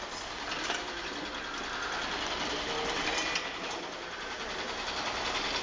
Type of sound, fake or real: real